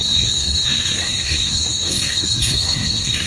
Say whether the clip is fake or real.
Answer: fake